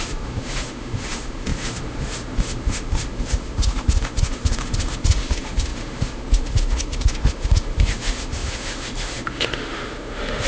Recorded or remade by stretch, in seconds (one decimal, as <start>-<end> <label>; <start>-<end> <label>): 0.0-10.5 remade